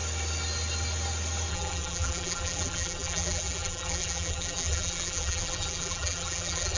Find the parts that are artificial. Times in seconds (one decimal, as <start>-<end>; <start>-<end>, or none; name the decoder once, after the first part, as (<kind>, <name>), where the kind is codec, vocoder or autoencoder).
1.5-6.8 (vocoder, BigVGAN v2)